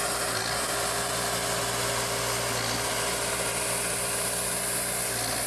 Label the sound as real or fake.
real